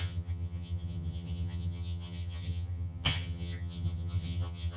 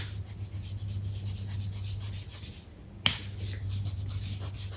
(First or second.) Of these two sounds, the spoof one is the first